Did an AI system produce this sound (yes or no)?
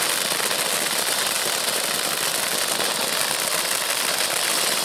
no